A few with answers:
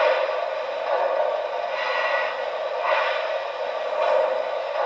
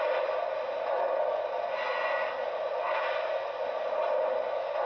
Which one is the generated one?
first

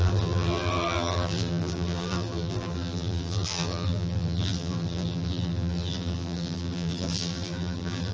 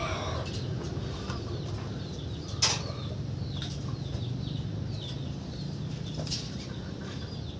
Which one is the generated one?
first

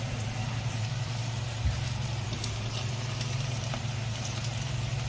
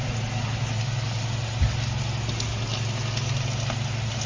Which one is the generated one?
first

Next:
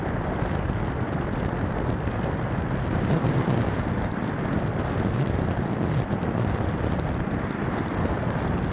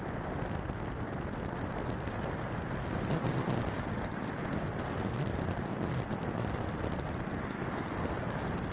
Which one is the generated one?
first